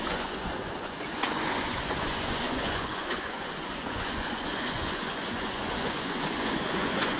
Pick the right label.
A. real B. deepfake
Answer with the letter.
B